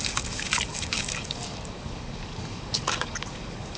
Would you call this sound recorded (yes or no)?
no